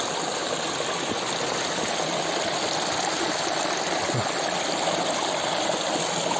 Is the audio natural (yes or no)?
yes